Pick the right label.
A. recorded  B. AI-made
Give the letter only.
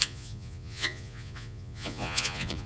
B